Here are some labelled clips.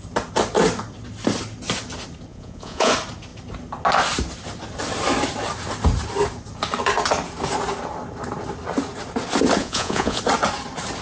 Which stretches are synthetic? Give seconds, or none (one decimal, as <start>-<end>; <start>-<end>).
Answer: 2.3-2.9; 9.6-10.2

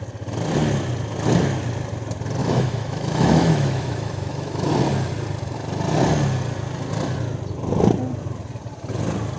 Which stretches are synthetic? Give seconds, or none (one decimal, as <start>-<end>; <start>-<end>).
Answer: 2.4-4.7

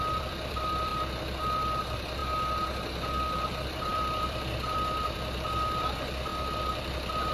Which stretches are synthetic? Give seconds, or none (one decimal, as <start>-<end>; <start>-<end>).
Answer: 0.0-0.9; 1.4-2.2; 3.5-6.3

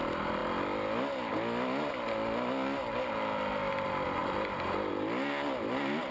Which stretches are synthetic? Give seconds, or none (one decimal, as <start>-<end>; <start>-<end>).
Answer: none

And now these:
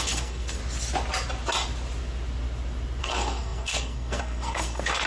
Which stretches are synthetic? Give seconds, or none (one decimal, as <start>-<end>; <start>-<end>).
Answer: 0.0-0.6; 3.0-5.1

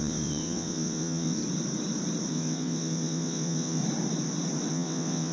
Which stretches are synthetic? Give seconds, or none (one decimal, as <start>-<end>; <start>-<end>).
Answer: 0.0-1.4; 2.3-3.8; 4.7-5.3